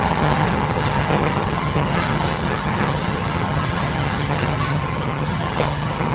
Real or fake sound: fake